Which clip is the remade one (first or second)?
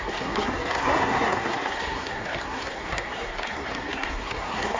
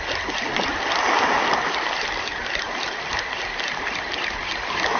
first